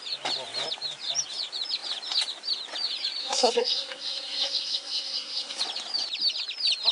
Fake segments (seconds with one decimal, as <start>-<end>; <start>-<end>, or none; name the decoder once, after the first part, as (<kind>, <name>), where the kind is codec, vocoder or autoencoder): 3.2-5.6 (codec, SNAC)